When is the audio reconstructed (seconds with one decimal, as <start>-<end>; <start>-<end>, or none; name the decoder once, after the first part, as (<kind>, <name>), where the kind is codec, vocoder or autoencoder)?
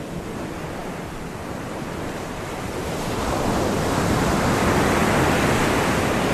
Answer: 0.0-5.0 (vocoder, BigVGAN v2); 5.8-6.3